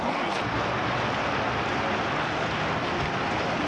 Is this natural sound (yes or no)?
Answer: yes